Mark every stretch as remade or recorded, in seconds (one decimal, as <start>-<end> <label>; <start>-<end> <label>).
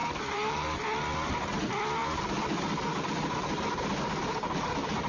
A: 0.0-0.8 remade; 0.8-5.1 recorded